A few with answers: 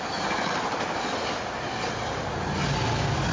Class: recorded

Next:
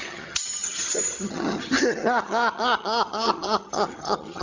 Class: remade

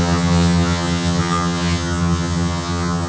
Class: remade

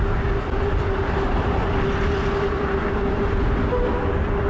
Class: recorded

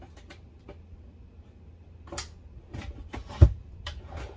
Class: recorded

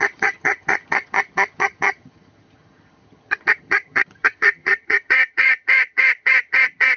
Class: remade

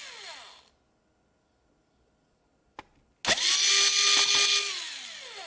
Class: recorded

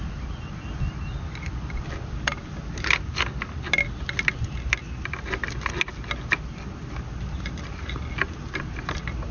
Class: recorded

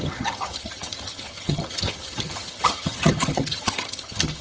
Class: remade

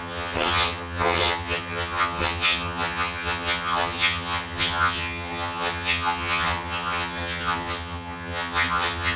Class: remade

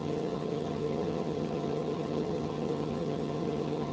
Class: remade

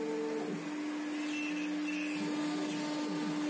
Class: recorded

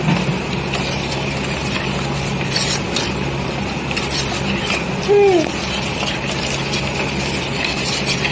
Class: recorded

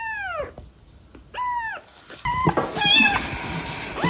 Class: recorded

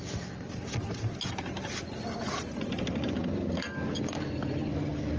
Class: recorded